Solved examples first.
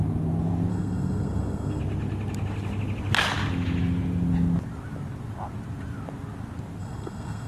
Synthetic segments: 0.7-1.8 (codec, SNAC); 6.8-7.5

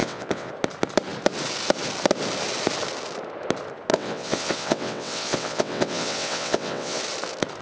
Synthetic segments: 0.0-0.5 (vocoder, WaveNeXt); 3.9-7.0